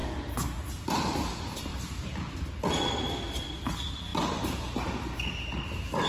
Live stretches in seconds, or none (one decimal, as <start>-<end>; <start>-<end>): 0.0-6.1